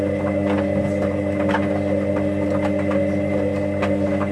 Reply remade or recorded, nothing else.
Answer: recorded